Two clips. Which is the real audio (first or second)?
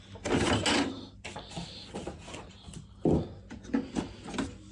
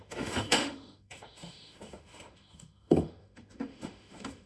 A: first